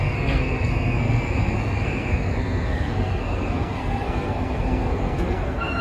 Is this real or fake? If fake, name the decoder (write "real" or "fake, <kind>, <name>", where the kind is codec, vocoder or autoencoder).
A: fake, codec, SNAC